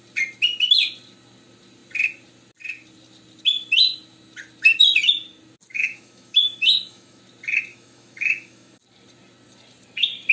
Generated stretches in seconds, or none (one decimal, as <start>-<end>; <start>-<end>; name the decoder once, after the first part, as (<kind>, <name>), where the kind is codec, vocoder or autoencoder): 5.7-7.2 (autoencoder, DAC-VAE); 7.7-8.8